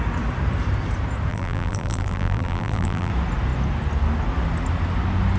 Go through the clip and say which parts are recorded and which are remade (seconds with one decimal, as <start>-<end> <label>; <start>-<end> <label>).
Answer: 0.0-1.3 recorded; 1.3-3.1 remade; 3.1-5.4 recorded